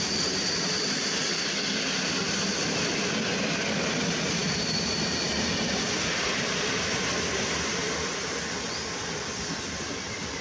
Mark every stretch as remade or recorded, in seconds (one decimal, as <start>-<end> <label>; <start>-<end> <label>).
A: 0.0-10.4 recorded